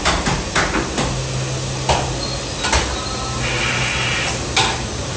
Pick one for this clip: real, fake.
real